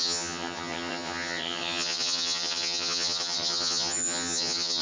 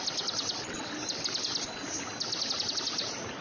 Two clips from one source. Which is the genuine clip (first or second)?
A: second